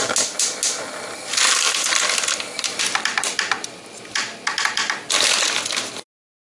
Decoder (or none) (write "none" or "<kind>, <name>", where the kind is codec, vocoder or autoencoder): none